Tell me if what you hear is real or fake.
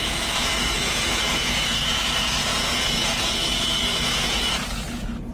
fake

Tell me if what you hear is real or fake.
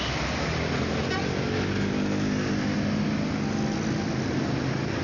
real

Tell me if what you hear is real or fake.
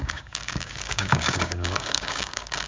fake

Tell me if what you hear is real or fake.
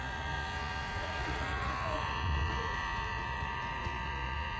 fake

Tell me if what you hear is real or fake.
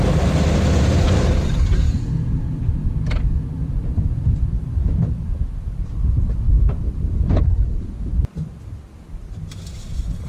real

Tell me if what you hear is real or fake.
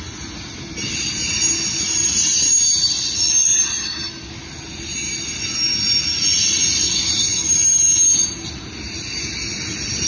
real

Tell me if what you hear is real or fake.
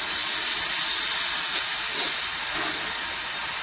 real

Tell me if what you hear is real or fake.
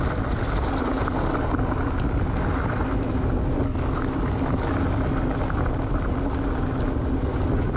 real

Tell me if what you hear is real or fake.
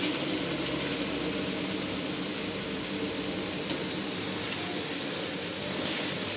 real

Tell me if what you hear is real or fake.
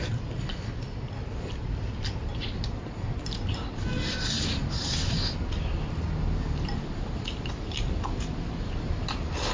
real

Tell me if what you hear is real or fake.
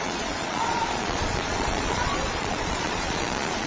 fake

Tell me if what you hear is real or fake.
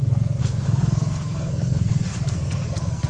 fake